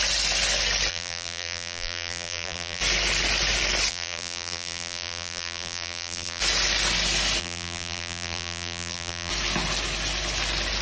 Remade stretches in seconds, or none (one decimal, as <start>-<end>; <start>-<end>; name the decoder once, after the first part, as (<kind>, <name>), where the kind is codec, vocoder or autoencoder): 0.9-2.8 (vocoder, BigVGAN v2); 3.9-6.4; 7.4-9.3